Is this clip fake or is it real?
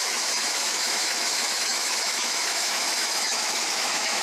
fake